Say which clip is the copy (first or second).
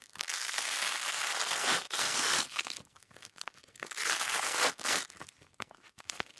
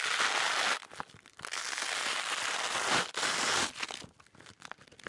first